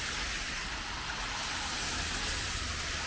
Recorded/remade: recorded